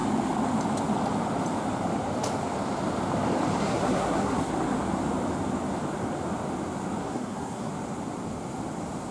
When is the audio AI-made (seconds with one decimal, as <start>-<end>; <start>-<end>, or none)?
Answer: 3.6-4.5; 7.0-7.7